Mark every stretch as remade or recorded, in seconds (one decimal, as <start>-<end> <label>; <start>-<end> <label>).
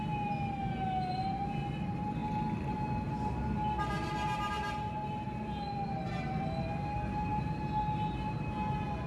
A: 0.0-9.1 recorded